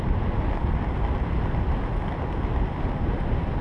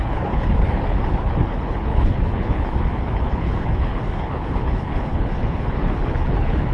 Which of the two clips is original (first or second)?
first